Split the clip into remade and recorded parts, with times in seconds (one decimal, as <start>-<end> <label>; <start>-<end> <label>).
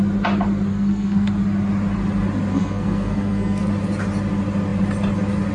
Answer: 0.0-0.7 recorded; 0.7-1.3 remade; 1.3-2.5 recorded; 2.5-3.7 remade; 3.7-5.5 recorded